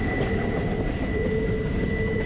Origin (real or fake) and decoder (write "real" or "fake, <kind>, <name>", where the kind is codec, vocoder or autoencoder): real